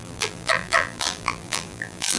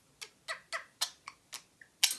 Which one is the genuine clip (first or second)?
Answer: second